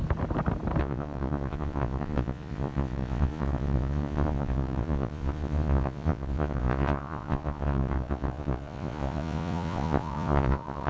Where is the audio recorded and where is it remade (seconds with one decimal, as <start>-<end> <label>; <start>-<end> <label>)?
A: 0.0-0.8 recorded; 0.8-10.9 remade